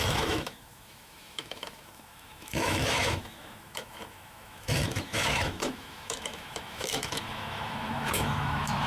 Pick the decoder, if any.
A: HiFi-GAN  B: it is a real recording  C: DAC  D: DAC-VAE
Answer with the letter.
D